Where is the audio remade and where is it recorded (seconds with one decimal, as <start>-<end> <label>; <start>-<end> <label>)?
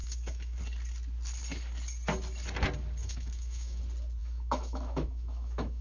0.0-0.6 remade; 0.6-3.0 recorded; 3.0-3.8 remade; 3.8-4.2 recorded; 4.2-5.8 remade